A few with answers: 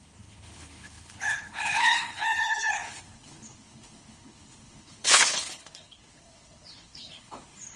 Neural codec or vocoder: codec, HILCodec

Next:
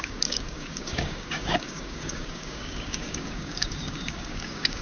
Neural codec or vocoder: codec, DAC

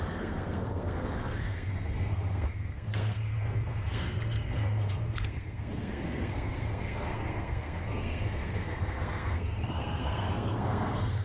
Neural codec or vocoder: codec, SNAC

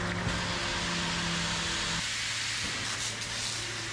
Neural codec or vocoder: none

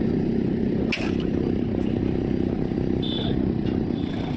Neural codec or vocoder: none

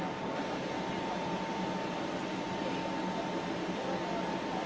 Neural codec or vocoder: none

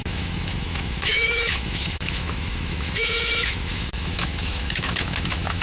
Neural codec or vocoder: autoencoder, DAC-VAE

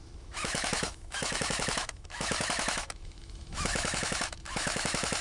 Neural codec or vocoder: autoencoder, DAC-VAE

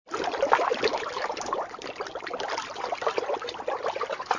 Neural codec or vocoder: none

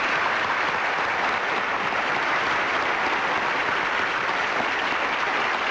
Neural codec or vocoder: none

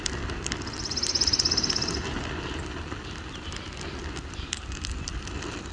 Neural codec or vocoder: none